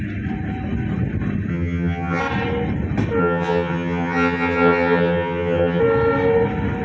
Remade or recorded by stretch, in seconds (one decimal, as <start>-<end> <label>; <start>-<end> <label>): 0.0-1.5 recorded; 1.5-2.2 remade; 2.2-3.2 recorded; 3.2-5.8 remade; 5.8-6.8 recorded